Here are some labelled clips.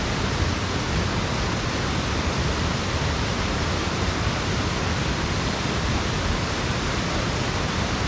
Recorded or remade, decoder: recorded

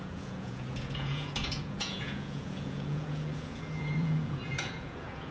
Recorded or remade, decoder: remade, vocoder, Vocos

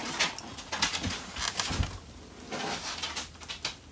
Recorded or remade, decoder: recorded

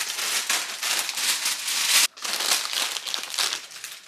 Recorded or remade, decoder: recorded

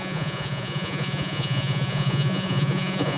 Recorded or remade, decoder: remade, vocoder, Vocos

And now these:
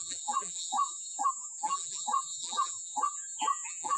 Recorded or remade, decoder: remade, vocoder, BigVGAN v2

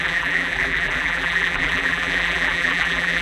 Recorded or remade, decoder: remade, vocoder, BigVGAN v2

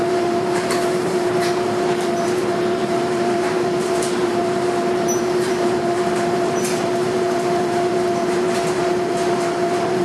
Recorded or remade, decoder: remade, vocoder, BigVGAN v2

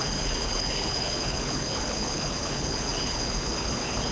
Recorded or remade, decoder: remade, codec, HILCodec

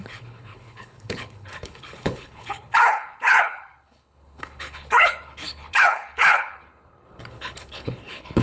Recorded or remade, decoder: remade, codec, HILCodec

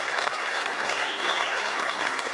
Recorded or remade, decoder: remade, codec, SNAC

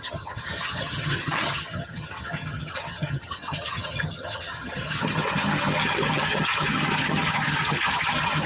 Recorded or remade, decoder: remade, vocoder, HiFi-GAN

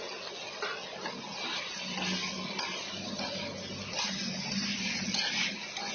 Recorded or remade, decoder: recorded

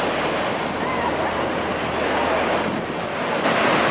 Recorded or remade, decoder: recorded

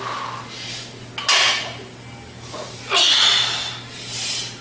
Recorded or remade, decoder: recorded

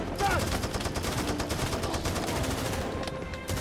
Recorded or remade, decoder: recorded